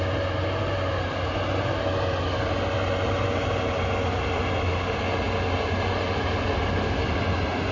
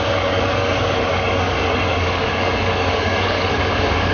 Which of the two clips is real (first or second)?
first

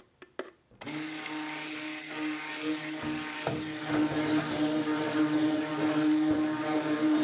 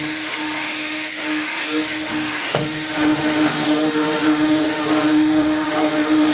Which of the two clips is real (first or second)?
first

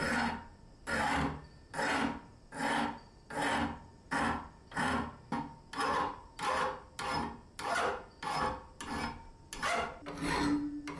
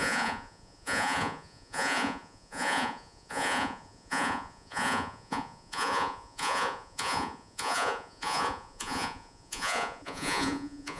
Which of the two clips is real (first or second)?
first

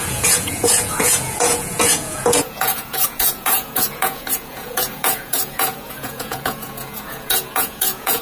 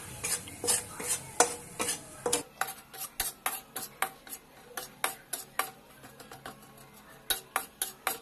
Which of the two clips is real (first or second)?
second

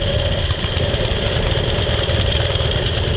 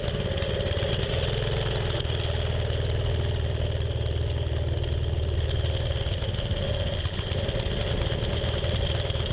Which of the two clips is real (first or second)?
second